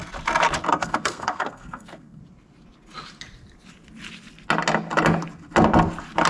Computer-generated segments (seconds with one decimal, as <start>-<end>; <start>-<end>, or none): 0.7-2.2